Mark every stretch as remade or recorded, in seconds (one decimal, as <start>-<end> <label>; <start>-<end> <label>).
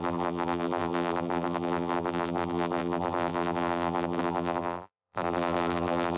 0.0-6.2 remade